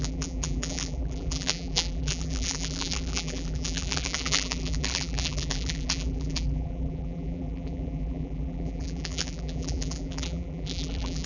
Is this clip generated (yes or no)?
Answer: yes